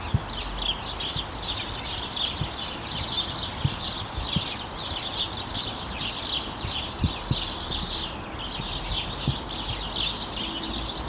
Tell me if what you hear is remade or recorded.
recorded